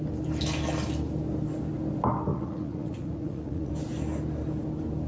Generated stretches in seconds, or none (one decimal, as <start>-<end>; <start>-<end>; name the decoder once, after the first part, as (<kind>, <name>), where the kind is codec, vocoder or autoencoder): 2.3-3.7 (vocoder, Vocos)